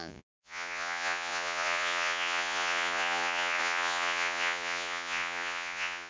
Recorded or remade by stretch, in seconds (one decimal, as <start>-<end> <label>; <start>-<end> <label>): 0.0-6.1 remade